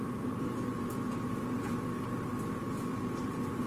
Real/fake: real